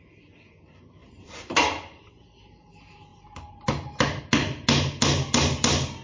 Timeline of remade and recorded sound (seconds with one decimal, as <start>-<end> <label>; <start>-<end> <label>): 0.0-1.0 recorded; 1.0-2.1 remade; 2.1-6.0 recorded